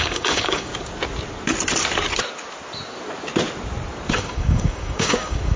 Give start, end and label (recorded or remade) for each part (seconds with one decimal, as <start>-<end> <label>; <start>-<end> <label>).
0.0-0.7 remade; 0.7-4.1 recorded; 4.1-5.6 remade